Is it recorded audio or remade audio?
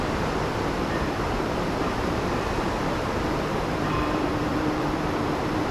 remade